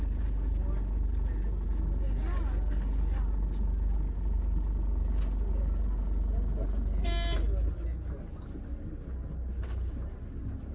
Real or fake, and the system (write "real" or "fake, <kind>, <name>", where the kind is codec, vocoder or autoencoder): real